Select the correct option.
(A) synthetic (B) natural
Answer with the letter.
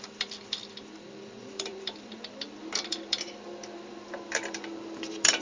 A